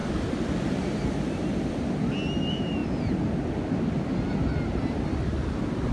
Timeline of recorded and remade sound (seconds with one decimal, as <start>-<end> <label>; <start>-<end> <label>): 0.0-5.9 recorded